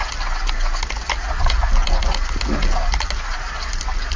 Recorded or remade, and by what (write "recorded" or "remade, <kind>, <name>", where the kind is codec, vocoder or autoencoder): recorded